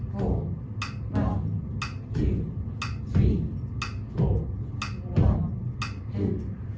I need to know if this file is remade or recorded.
recorded